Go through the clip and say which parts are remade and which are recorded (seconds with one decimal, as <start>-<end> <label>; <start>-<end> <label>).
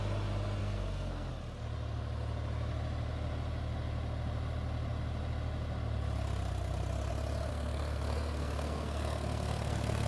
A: 0.0-0.6 recorded; 0.6-1.3 remade; 1.3-7.5 recorded; 7.5-10.1 remade